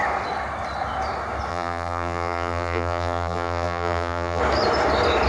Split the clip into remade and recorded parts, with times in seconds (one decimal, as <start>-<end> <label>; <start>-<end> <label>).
0.0-1.5 recorded; 1.5-4.4 remade; 4.4-5.3 recorded